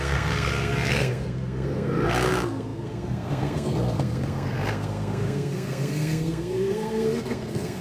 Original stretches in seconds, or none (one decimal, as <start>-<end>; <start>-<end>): none